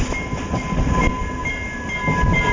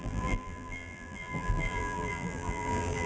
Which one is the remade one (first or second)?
second